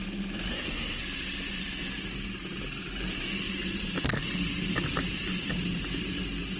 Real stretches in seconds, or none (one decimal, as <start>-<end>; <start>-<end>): 0.0-0.5; 1.0-6.6